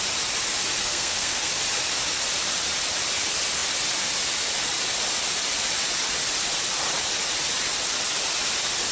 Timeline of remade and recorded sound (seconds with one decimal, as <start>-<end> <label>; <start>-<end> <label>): 0.0-0.8 recorded; 0.8-1.5 remade; 1.5-8.9 recorded